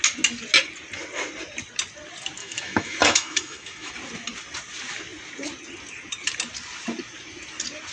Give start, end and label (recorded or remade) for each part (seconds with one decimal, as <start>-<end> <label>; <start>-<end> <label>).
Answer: 0.0-2.4 recorded; 2.4-3.9 remade; 3.9-7.9 recorded